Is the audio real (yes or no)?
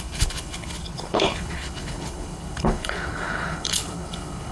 no